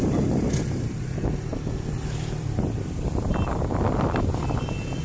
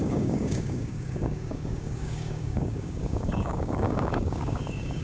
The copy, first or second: second